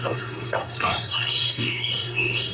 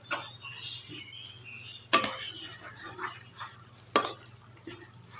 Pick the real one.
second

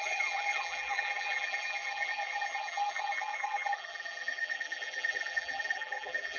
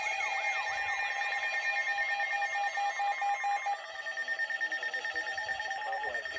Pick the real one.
second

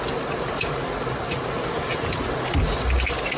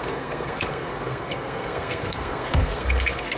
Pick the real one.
first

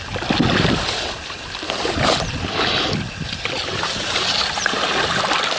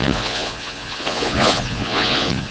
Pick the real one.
first